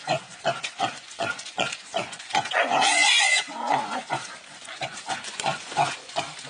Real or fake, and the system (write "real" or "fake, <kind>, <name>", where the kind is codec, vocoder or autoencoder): fake, vocoder, Vocos